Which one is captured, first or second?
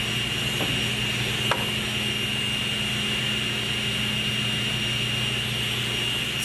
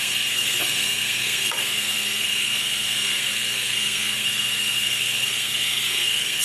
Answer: first